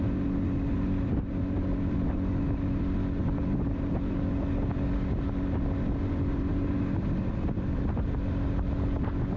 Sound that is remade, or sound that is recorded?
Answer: recorded